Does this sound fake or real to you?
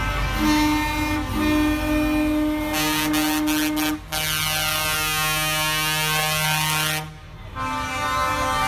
real